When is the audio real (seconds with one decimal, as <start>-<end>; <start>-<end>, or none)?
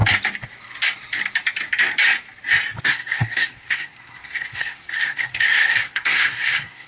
0.0-2.8